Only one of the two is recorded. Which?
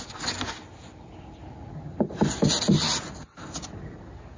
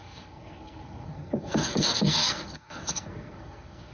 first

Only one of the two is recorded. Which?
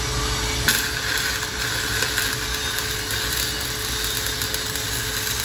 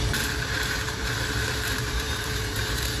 first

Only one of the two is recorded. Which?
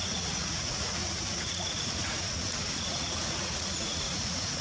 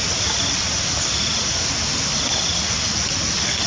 second